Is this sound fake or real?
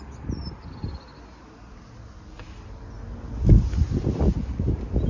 real